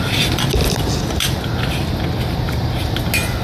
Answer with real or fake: real